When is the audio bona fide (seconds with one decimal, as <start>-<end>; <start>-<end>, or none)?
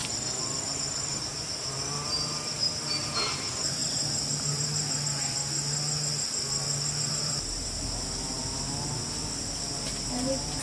3.8-7.1; 8.4-9.2